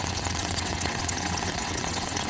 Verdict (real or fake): fake